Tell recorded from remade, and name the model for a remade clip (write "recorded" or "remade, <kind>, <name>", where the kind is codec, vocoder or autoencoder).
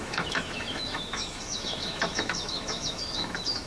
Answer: remade, autoencoder, DAC-VAE